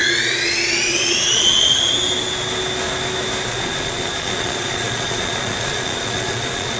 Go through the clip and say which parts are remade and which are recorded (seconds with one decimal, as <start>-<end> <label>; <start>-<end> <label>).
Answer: 0.0-1.9 remade; 1.9-3.5 recorded; 3.5-6.8 remade